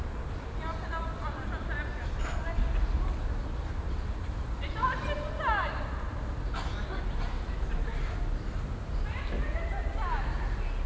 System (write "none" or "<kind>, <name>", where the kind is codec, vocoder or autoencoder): none